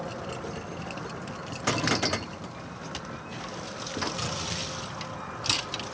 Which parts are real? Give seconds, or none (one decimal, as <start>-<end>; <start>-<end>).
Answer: 0.0-5.9